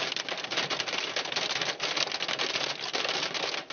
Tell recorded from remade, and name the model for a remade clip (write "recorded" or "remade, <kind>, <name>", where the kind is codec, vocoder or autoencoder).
recorded